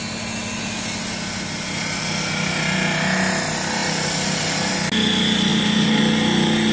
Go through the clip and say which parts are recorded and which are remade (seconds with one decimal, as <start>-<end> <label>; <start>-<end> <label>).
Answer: 0.0-3.8 recorded; 3.8-4.7 remade; 4.7-5.5 recorded; 5.5-6.0 remade; 6.0-6.7 recorded